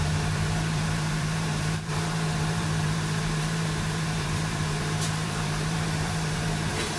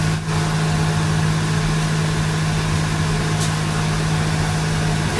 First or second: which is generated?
first